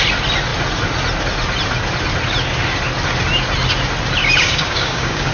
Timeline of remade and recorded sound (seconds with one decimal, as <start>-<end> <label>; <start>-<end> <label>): 0.0-4.2 recorded; 4.2-5.3 remade